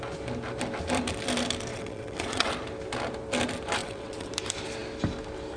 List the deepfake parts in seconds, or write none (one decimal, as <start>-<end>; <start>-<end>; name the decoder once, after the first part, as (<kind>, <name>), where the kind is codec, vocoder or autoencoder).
1.7-2.5 (vocoder, WaveNeXt); 3.8-4.3